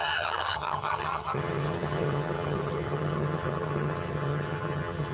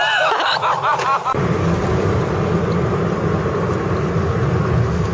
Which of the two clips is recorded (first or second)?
second